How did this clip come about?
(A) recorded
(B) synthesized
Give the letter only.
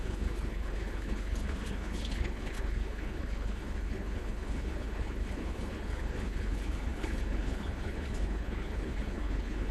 B